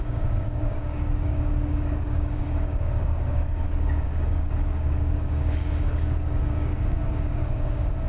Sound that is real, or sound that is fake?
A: fake